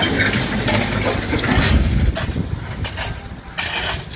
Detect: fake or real real